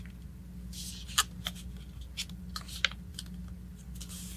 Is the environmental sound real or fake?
real